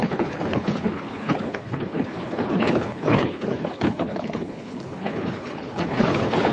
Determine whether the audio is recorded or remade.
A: remade